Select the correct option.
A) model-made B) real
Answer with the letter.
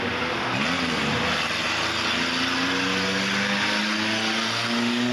B